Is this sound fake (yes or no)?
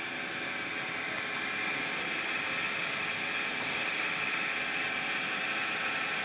no